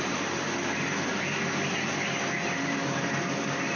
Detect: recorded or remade recorded